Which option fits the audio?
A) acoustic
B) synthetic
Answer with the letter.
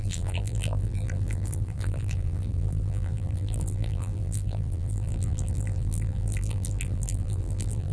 B